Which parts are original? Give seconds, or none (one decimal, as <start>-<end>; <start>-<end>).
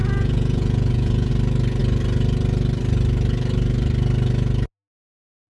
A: 1.3-5.5